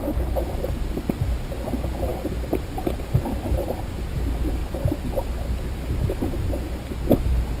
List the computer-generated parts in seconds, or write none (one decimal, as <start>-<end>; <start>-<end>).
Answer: none